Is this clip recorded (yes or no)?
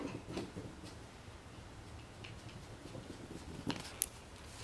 yes